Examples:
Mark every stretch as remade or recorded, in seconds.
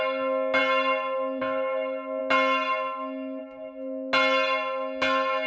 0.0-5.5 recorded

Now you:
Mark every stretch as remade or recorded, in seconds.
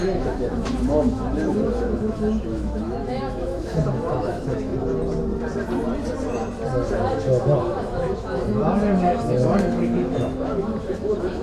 0.0-4.7 remade; 4.7-7.1 recorded; 7.1-11.4 remade